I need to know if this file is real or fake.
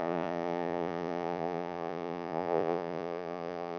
fake